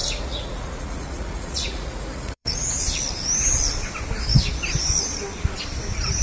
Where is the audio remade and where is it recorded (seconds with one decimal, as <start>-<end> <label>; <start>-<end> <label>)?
0.0-2.7 remade; 2.7-6.2 recorded